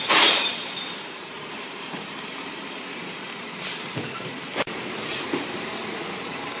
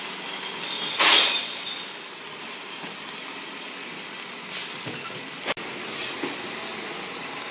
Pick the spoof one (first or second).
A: first